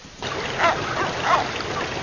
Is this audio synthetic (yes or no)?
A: no